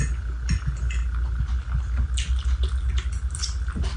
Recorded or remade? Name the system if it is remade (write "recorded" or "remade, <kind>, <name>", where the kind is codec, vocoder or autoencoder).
recorded